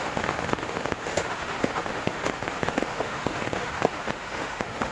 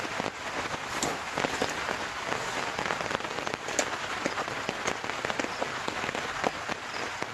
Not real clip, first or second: first